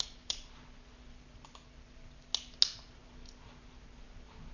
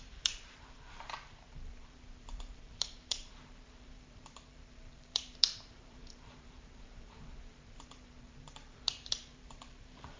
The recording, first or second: first